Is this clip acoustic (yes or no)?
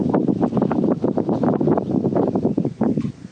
no